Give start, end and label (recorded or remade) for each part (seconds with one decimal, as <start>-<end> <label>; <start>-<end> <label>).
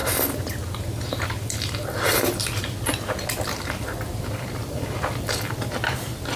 0.0-6.4 recorded